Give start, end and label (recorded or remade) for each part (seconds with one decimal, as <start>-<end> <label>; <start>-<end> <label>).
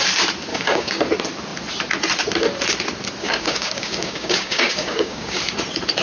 0.0-0.5 recorded; 0.5-1.0 remade; 1.0-3.2 recorded; 3.2-5.4 remade; 5.4-6.0 recorded